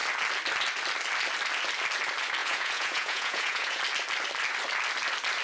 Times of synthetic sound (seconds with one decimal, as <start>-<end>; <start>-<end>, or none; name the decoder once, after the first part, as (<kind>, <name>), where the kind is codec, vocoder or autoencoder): 2.4-3.8 (vocoder, Vocos)